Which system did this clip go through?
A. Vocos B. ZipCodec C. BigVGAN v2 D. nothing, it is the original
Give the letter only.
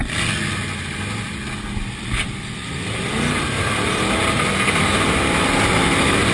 D